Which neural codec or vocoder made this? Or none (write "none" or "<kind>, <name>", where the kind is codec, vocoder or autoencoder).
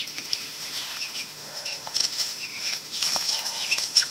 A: autoencoder, DAC-VAE